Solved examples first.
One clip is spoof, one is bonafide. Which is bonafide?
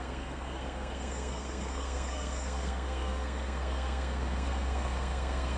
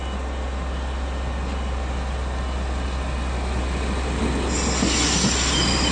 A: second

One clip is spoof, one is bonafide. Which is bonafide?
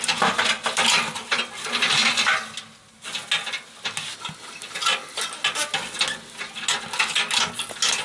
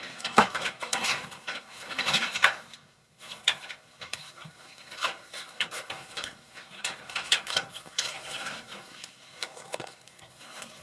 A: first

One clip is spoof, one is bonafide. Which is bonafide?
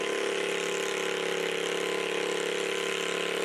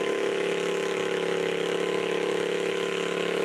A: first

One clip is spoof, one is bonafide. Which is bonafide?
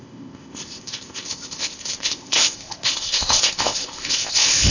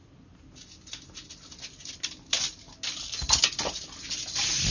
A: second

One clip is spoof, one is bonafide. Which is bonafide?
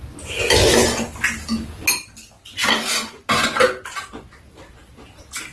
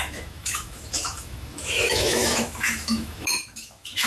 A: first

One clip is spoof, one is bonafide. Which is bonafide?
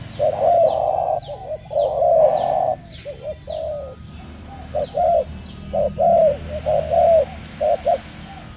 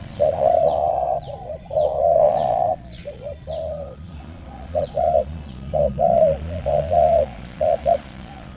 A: first